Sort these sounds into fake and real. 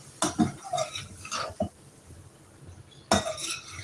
real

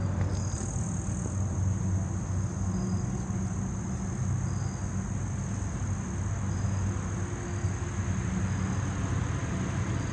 real